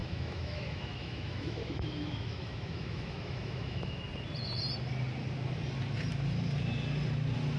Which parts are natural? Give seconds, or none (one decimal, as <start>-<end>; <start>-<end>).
4.1-7.6

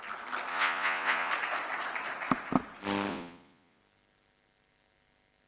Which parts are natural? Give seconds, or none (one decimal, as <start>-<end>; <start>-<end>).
0.0-0.5; 1.3-3.1; 3.8-5.5

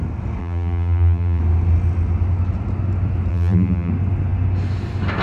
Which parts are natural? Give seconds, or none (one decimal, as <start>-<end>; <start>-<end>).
0.0-0.4; 1.4-3.3; 3.9-5.2

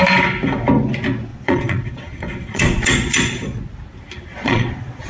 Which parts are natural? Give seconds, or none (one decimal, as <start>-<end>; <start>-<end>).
0.0-1.3; 3.6-4.3

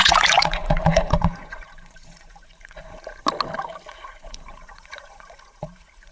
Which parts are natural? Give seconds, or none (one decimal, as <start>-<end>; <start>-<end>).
3.2-3.9

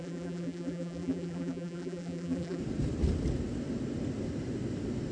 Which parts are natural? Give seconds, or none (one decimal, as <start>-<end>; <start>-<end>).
2.6-5.1

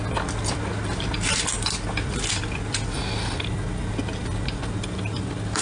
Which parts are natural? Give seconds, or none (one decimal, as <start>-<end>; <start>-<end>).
0.0-5.6

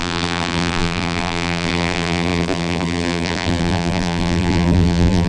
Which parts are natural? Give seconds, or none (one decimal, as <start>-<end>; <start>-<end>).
none